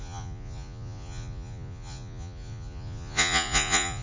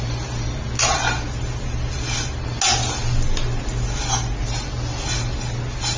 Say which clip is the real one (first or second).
second